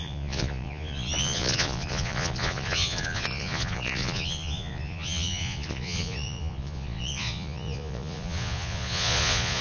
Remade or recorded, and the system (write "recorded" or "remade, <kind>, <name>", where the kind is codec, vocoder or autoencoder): remade, vocoder, Vocos